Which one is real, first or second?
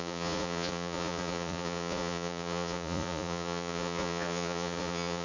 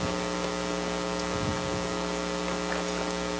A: second